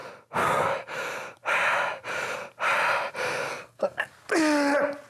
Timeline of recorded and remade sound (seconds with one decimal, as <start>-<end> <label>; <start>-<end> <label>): 0.0-3.5 recorded; 3.5-4.1 remade; 4.1-5.1 recorded